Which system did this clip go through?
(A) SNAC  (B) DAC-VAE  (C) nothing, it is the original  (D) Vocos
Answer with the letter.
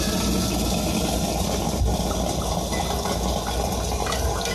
C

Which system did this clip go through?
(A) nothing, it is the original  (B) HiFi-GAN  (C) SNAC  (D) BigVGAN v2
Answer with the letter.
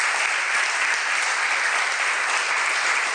A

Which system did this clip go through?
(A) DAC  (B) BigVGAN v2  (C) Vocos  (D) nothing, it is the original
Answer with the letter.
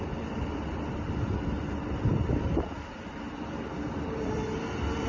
B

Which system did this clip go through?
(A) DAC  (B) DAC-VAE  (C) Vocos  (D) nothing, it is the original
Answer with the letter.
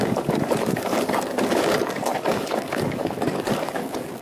A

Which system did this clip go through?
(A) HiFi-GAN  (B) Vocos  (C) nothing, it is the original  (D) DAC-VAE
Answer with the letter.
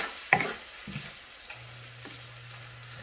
C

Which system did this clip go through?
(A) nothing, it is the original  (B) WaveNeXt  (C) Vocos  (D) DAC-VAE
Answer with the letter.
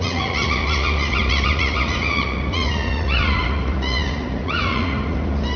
C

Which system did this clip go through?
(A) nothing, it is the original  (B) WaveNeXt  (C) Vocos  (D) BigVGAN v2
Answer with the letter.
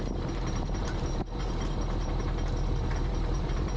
D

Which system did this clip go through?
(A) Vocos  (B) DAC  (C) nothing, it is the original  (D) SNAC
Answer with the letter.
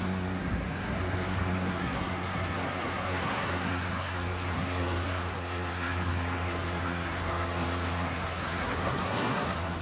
D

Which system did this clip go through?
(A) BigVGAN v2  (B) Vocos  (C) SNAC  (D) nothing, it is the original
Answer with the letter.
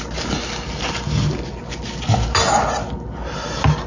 D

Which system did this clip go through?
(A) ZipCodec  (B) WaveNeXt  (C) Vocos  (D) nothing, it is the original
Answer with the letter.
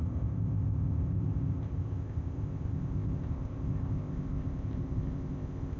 A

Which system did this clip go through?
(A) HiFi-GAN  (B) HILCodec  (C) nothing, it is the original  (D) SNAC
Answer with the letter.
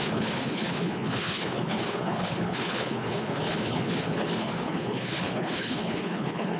B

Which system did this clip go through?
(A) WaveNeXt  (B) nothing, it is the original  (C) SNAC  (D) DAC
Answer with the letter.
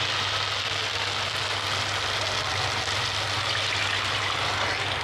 B